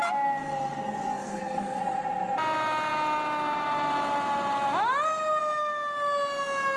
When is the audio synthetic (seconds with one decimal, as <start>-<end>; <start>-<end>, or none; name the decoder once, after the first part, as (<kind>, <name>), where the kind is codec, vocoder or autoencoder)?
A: 1.1-1.8 (codec, SNAC)